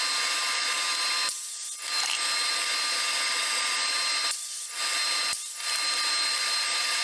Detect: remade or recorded recorded